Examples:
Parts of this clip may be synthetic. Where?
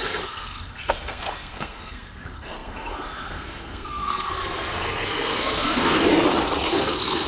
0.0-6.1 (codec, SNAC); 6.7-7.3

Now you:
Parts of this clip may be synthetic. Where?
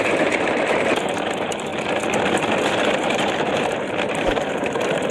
0.0-1.7 (vocoder, BigVGAN v2); 3.0-5.1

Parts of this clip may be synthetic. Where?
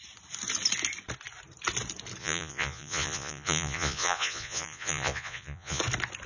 2.2-5.8 (vocoder, Vocos)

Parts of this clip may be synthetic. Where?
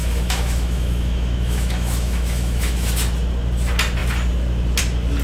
0.0-2.9 (autoencoder, DAC-VAE)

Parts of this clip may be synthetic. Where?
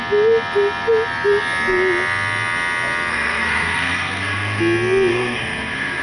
3.1-4.6 (codec, SNAC); 5.1-6.0